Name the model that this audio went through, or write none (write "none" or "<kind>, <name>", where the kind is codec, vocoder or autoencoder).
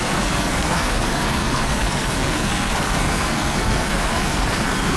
codec, SNAC